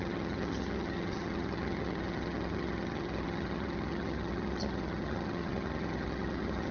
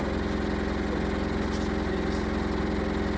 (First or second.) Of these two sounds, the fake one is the first